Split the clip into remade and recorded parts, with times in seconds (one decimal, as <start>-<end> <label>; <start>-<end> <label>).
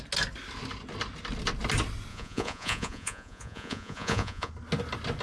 0.0-2.1 recorded; 2.1-4.5 remade; 4.5-5.2 recorded